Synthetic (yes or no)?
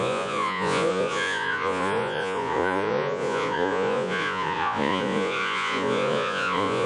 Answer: yes